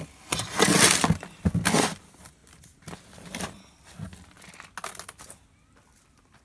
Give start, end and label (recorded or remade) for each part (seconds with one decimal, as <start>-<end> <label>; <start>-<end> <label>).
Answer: 0.0-6.4 recorded